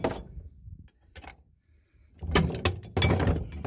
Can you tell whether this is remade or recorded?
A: recorded